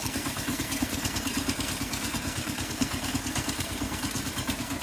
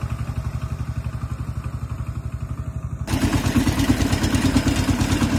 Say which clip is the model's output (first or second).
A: first